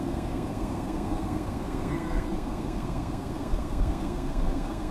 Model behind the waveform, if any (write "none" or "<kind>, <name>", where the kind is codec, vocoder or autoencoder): codec, SNAC